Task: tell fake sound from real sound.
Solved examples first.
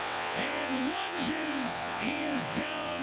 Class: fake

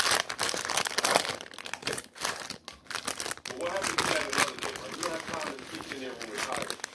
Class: real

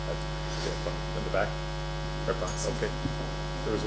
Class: real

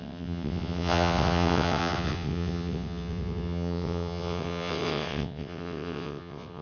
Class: fake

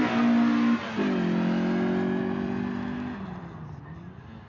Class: real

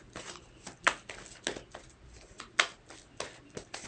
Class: real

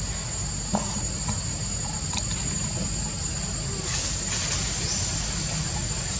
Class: real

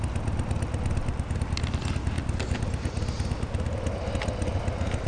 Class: real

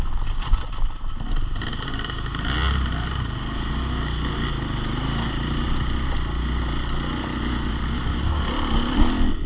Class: real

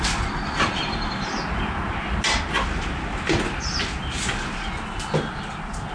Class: real